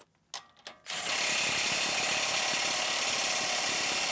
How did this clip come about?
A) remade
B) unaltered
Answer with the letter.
B